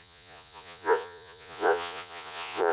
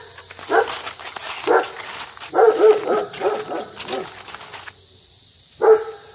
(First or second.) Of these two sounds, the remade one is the first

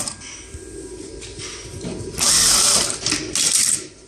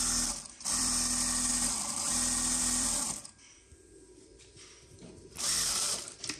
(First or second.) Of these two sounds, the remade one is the second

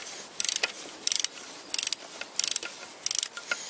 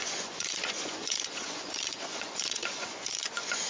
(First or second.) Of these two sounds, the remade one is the second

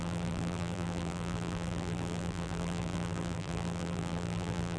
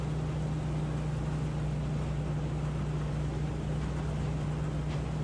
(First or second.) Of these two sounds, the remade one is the first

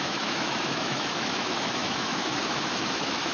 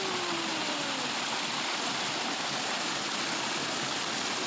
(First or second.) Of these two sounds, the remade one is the first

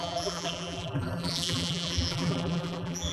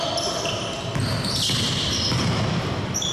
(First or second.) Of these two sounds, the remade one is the first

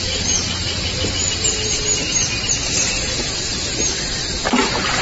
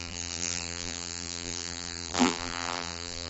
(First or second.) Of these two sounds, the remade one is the second